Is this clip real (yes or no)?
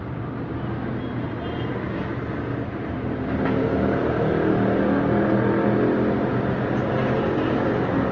yes